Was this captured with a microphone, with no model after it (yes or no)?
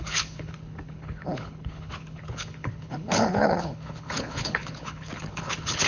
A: no